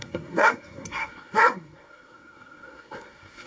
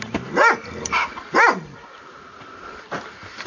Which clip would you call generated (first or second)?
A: first